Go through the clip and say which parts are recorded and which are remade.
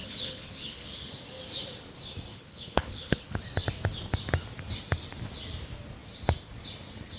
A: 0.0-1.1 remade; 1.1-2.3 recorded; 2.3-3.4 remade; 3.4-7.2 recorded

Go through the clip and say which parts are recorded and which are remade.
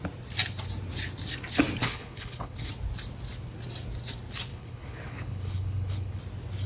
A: 0.0-1.8 recorded; 1.8-2.7 remade; 2.7-4.5 recorded; 4.5-6.2 remade; 6.2-6.7 recorded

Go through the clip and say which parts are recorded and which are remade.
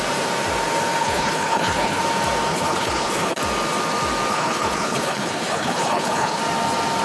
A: 0.0-1.0 recorded; 1.0-2.0 remade; 2.0-2.5 recorded; 2.5-3.4 remade; 3.4-4.3 recorded; 4.3-6.4 remade; 6.4-7.0 recorded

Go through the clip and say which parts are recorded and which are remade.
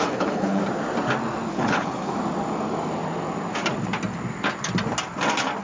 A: 0.0-0.6 remade; 0.6-1.5 recorded; 1.5-2.1 remade; 2.1-5.6 recorded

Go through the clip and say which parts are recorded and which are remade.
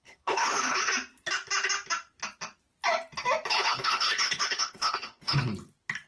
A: 0.0-0.9 remade; 0.9-3.5 recorded; 3.5-5.5 remade; 5.5-6.1 recorded